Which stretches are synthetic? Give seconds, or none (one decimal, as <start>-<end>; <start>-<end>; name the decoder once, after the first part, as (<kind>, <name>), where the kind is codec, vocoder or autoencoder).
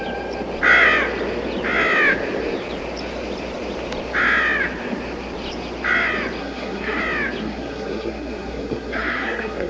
6.4-7.0 (codec, SNAC); 7.4-9.7